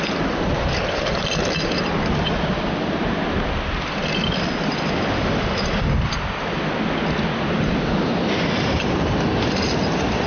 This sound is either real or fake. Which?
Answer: real